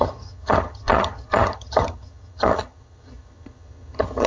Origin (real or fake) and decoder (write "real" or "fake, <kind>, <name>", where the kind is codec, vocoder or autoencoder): fake, vocoder, HiFi-GAN